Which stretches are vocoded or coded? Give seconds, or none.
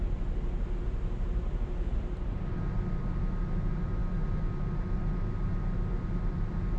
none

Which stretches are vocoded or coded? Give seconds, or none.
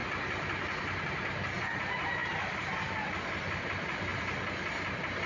2.2-3.0 (vocoder, BigVGAN v2)